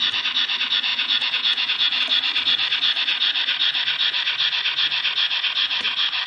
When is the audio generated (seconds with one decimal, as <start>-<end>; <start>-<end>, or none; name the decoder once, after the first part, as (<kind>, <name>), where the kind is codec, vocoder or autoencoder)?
0.9-2.0 (vocoder, Vocos)